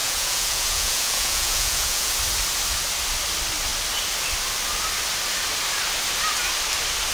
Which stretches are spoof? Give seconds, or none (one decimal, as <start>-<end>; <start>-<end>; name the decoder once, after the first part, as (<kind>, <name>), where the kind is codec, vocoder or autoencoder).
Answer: 0.0-2.1 (vocoder, Vocos)